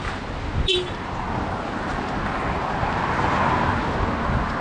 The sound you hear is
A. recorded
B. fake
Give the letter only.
A